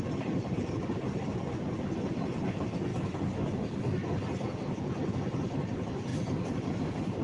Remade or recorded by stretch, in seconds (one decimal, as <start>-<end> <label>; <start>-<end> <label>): 0.0-7.2 recorded